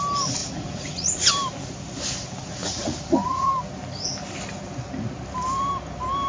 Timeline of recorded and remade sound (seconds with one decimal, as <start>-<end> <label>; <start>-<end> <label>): 0.0-0.4 recorded; 0.4-1.3 remade; 1.3-2.6 recorded; 2.6-3.5 remade; 3.5-6.3 recorded